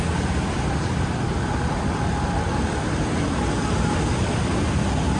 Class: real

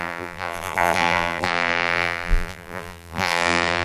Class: fake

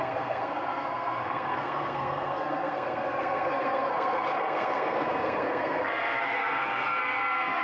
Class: fake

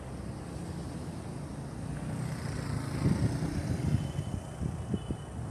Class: real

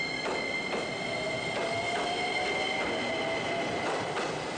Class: real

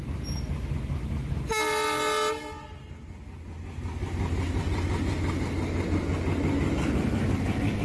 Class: real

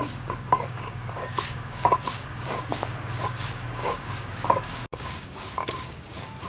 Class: fake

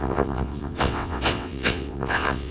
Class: fake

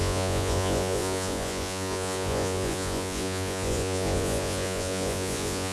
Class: fake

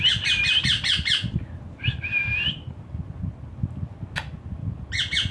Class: real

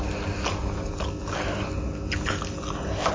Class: real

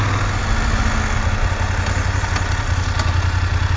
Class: real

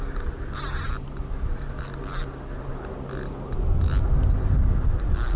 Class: real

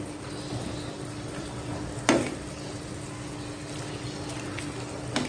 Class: real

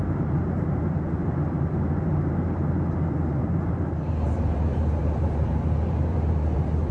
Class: fake